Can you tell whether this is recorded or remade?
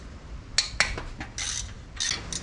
recorded